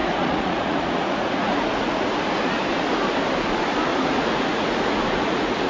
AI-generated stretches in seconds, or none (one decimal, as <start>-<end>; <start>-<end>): 0.0-2.2; 3.9-5.7